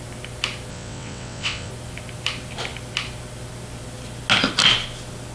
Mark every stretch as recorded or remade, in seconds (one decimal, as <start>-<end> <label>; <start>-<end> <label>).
0.0-0.7 recorded; 0.7-1.7 remade; 1.7-5.3 recorded